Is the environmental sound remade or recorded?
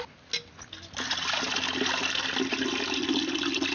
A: recorded